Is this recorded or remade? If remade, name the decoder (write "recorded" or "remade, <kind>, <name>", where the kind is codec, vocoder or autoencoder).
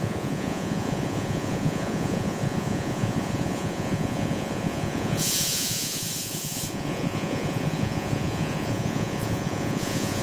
remade, vocoder, Vocos